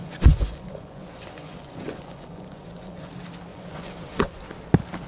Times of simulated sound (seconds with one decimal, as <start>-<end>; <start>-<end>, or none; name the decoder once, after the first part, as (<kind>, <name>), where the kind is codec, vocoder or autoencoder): 0.0-3.1 (vocoder, Vocos); 3.5-4.4